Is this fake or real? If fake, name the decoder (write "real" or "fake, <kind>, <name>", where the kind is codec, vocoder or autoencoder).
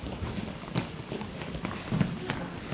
fake, codec, DAC